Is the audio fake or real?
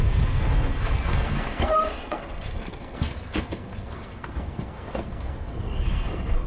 fake